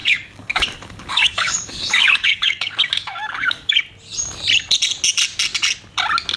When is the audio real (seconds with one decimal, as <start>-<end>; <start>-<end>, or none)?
3.8-6.4